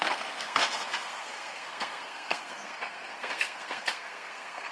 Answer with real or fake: fake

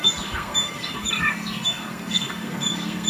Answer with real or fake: fake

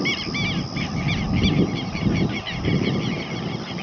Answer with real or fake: real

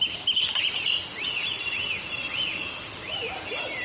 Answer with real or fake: real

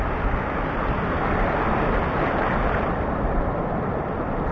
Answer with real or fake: real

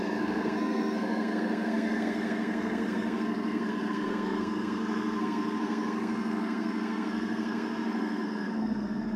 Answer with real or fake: fake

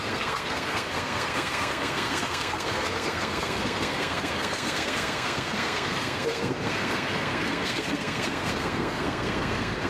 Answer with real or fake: fake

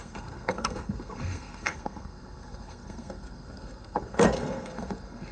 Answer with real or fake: fake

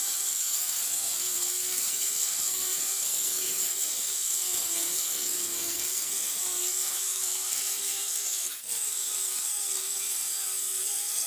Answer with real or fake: fake